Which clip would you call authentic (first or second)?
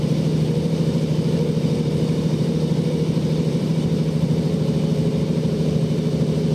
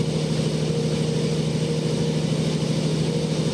second